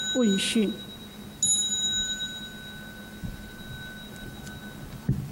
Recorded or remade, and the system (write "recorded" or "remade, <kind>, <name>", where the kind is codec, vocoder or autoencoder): recorded